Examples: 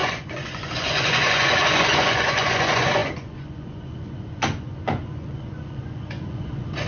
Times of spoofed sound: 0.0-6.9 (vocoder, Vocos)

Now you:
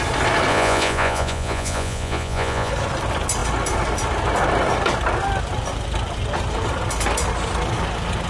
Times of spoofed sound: 0.5-2.7 (vocoder, Vocos)

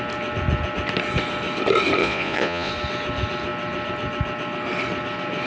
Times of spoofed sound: 2.0-2.7 (vocoder, Vocos)

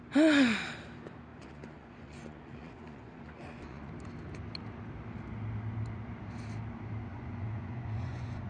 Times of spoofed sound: 1.3-3.9 (vocoder, Vocos); 7.1-8.5